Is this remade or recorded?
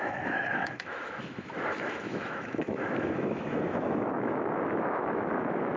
remade